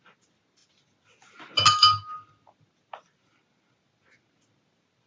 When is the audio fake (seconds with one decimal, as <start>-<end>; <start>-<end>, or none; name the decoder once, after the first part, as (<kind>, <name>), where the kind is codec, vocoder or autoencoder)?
none

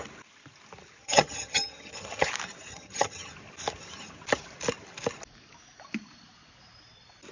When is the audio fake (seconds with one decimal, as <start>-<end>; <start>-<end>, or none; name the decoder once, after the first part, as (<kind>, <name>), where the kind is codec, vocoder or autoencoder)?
1.0-2.3 (vocoder, HiFi-GAN); 2.7-3.3

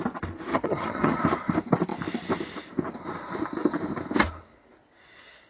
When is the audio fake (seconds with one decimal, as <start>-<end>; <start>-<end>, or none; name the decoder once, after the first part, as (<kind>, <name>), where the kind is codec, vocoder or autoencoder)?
0.5-1.2 (vocoder, HiFi-GAN)

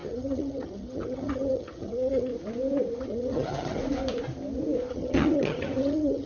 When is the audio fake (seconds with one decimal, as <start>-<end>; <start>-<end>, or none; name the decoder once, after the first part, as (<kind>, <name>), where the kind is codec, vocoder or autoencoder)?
0.0-2.3 (vocoder, HiFi-GAN); 3.0-3.8; 4.9-6.3